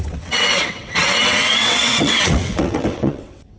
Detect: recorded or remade remade